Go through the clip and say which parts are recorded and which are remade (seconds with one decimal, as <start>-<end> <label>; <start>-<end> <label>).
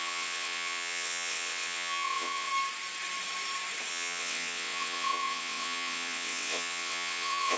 0.0-2.5 remade; 2.5-3.9 recorded; 3.9-7.6 remade